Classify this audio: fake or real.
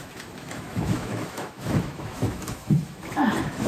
fake